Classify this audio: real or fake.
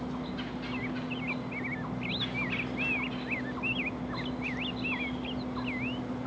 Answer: real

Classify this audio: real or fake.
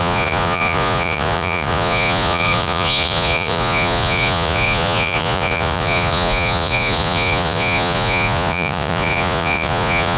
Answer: fake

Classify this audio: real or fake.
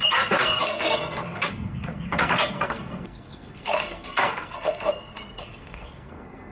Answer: fake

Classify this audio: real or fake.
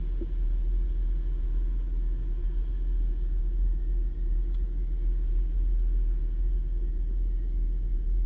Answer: real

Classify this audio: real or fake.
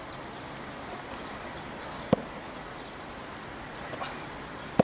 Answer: real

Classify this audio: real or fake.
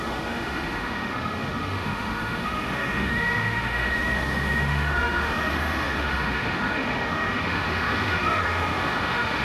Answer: fake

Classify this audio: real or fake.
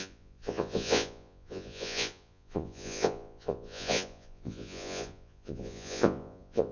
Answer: fake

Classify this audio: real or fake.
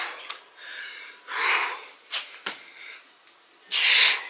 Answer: real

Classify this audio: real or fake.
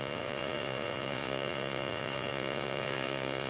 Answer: fake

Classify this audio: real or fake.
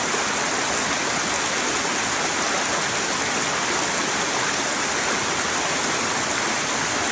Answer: real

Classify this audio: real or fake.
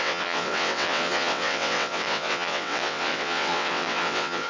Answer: fake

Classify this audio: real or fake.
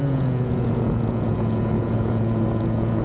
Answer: fake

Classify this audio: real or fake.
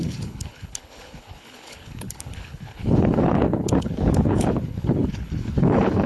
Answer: fake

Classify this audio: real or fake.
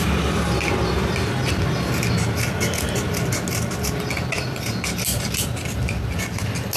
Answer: real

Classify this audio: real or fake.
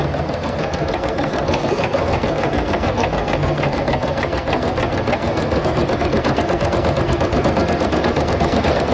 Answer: fake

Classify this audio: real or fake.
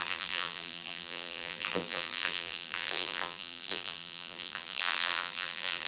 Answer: fake